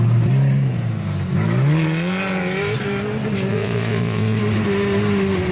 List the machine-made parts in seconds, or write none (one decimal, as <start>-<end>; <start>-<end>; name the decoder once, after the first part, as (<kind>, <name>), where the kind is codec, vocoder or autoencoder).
3.5-4.4 (vocoder, Vocos)